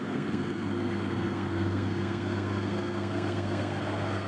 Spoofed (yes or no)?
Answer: yes